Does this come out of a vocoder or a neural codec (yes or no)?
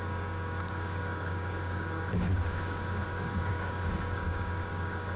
yes